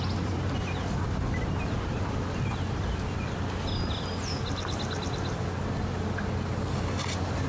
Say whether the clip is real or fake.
real